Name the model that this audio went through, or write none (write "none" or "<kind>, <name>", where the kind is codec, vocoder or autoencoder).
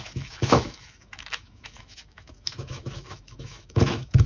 autoencoder, DAC-VAE